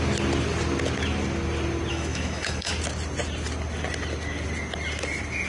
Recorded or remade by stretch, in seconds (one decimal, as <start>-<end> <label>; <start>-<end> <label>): 0.0-1.9 recorded; 1.9-2.7 remade; 2.7-5.5 recorded